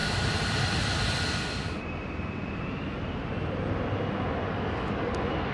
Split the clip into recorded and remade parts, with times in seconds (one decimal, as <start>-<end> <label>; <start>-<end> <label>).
0.0-4.5 recorded; 4.5-5.1 remade; 5.1-5.5 recorded